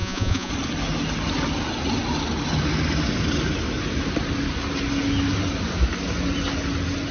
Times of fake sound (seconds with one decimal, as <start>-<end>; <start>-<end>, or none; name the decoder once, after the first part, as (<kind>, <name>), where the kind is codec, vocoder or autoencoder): 0.0-0.5 (vocoder, Vocos)